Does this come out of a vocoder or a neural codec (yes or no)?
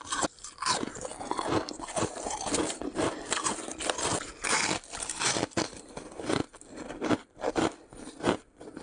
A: yes